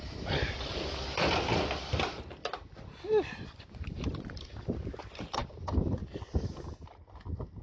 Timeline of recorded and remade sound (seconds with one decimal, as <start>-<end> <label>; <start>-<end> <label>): 0.0-7.6 recorded